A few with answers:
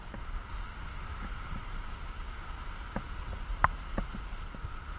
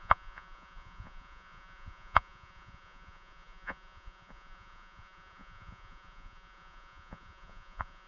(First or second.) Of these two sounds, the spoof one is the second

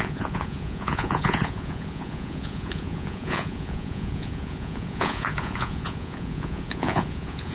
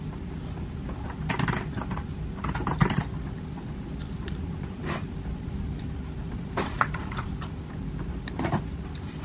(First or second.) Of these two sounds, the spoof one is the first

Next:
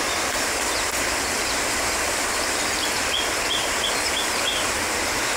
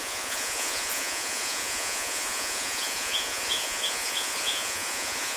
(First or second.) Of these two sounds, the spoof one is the second